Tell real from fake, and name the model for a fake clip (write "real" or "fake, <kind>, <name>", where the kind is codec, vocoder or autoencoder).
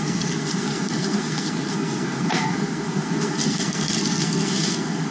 fake, codec, SNAC